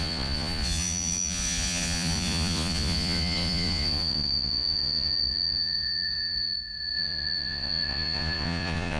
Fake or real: fake